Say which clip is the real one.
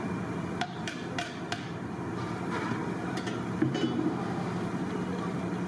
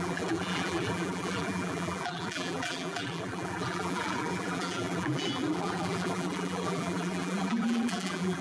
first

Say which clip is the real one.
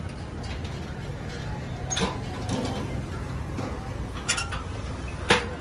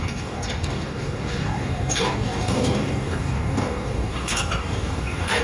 first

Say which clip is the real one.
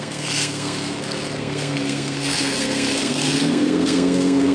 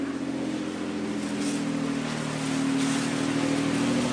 second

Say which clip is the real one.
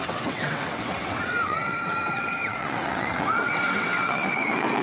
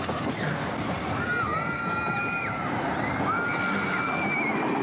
second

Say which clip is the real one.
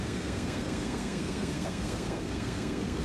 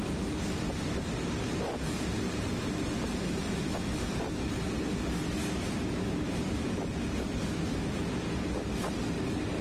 second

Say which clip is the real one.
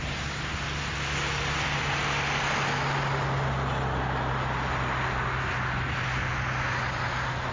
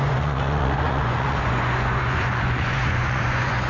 first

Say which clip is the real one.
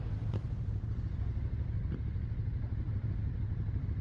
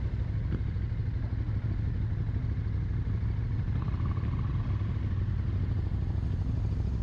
second